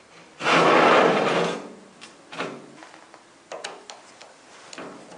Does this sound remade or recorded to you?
recorded